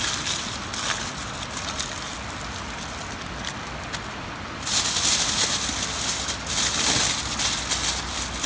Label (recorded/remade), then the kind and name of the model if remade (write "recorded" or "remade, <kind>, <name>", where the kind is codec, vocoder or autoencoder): recorded